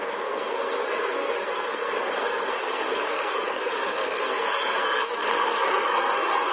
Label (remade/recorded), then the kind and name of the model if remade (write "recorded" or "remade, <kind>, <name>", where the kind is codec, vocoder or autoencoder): remade, codec, SNAC